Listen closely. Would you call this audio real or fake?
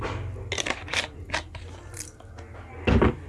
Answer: real